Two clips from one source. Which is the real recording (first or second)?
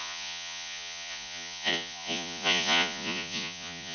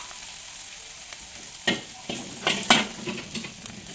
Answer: second